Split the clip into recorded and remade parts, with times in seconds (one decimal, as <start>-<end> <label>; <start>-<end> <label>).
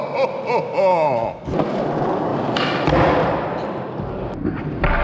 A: 0.0-2.3 recorded; 2.3-3.9 remade; 3.9-5.0 recorded